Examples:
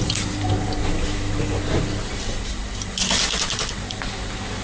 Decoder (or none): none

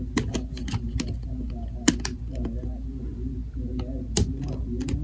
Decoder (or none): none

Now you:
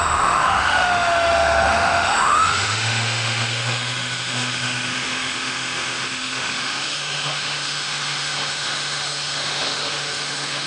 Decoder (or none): autoencoder, DAC-VAE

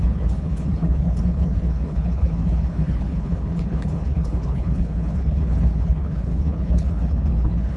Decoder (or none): codec, HILCodec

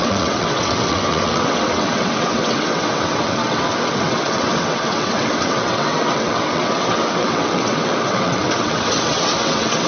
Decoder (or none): vocoder, WaveNeXt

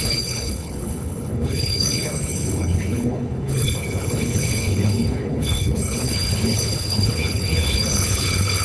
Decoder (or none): codec, HILCodec